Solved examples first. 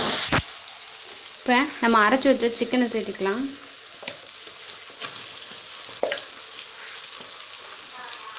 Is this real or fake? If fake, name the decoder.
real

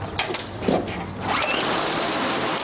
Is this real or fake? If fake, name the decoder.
real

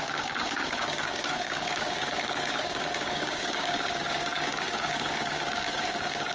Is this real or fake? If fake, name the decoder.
fake, codec, DAC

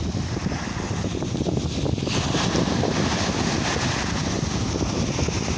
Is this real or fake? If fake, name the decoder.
real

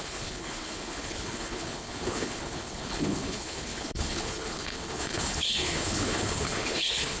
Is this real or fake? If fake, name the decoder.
fake, codec, HILCodec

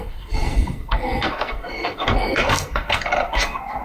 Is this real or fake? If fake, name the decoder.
fake, codec, SNAC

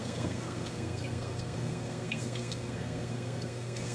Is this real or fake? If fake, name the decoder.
fake, codec, SNAC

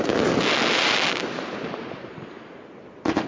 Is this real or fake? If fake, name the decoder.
real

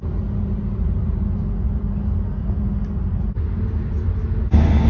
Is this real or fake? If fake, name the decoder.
real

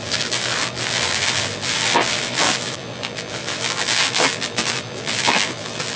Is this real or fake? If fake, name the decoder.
fake, vocoder, BigVGAN v2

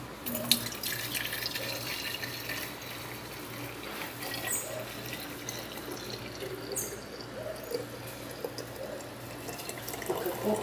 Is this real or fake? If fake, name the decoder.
real